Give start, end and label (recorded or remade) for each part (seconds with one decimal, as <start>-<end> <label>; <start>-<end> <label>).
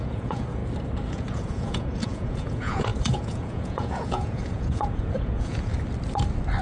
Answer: 0.0-0.6 remade; 0.6-1.1 recorded; 1.1-5.7 remade; 5.7-6.6 recorded